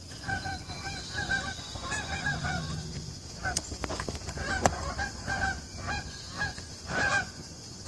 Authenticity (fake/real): fake